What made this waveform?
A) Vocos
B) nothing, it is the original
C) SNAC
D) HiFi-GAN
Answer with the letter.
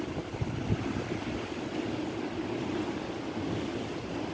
B